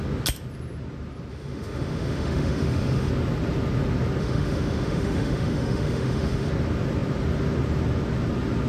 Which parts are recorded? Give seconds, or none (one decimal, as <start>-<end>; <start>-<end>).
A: 0.0-1.3; 3.1-4.2; 6.5-8.7